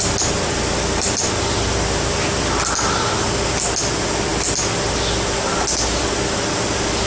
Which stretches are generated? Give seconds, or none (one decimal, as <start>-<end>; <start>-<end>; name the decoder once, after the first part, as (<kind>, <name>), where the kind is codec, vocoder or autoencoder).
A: none